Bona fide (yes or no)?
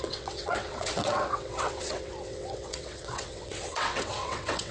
no